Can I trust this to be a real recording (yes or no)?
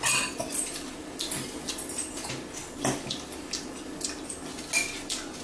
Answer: yes